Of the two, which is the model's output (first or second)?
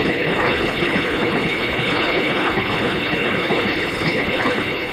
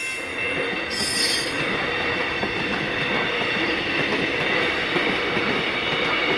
first